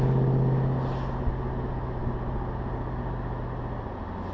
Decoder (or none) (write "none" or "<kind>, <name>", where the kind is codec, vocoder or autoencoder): none